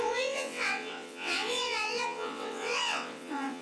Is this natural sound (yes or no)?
no